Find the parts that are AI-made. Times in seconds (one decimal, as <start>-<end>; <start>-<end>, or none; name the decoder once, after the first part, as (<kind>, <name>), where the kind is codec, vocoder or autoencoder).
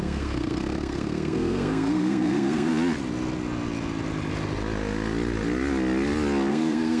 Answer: 0.0-2.7 (codec, SNAC); 6.5-7.0